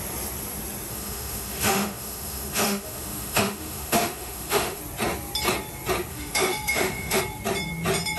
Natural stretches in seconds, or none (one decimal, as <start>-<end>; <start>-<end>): 0.0-0.9; 4.8-6.1; 7.2-8.2